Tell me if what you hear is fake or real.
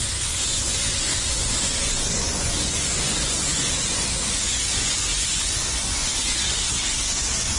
fake